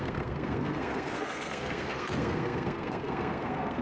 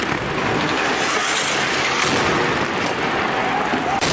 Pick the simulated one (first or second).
first